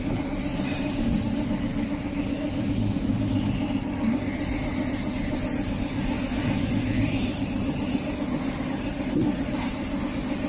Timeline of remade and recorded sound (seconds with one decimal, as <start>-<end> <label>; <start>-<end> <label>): 0.0-9.3 recorded; 9.3-10.0 remade; 10.0-10.5 recorded